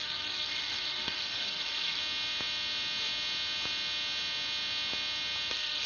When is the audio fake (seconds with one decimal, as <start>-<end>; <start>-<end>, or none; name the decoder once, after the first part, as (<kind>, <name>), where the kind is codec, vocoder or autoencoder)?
0.0-2.0 (codec, SNAC); 5.5-5.9

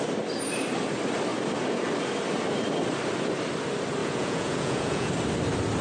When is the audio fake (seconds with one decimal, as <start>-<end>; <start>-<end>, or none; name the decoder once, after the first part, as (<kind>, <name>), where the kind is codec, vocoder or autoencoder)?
4.0-5.1 (vocoder, Vocos)

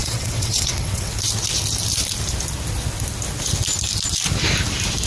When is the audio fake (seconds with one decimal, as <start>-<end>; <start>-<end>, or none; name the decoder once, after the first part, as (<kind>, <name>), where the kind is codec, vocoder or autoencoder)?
0.0-1.1 (vocoder, WaveNeXt)